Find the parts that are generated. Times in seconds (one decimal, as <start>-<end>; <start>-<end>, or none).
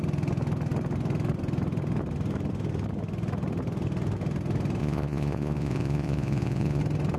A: 4.8-6.8